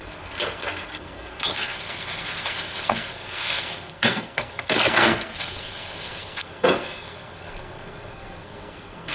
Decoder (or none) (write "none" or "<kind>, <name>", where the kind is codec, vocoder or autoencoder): codec, SNAC